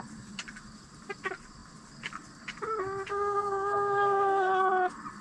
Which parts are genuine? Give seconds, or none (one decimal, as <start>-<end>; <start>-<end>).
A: 0.0-3.1; 4.5-5.2